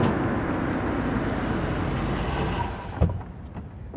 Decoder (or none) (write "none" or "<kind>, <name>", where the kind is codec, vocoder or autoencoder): none